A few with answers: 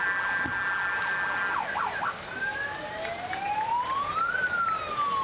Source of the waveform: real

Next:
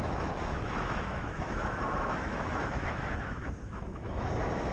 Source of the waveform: fake